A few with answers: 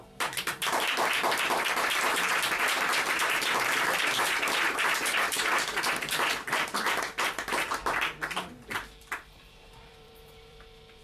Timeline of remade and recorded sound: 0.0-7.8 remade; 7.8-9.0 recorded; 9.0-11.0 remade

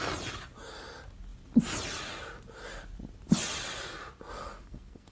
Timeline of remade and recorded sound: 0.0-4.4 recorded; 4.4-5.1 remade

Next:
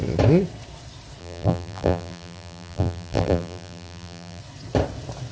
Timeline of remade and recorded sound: 0.0-1.2 recorded; 1.2-4.4 remade; 4.4-5.3 recorded